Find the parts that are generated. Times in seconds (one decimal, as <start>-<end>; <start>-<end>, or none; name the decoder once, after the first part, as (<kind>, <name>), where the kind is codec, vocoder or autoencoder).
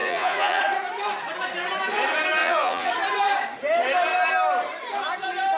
0.0-0.6 (vocoder, Vocos); 2.4-2.9